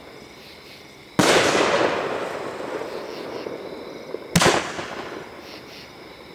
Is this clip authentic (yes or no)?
yes